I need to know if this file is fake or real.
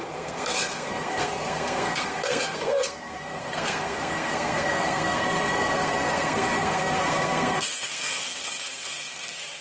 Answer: fake